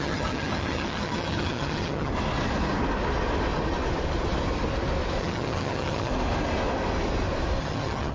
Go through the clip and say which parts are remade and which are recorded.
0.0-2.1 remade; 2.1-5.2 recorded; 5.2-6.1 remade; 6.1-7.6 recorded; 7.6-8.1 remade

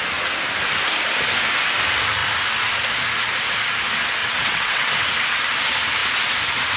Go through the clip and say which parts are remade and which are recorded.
0.0-4.2 recorded; 4.2-4.9 remade; 4.9-6.8 recorded